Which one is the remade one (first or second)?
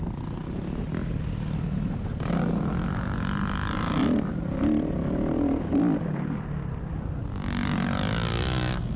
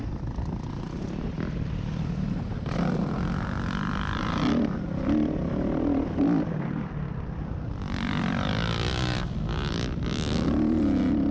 second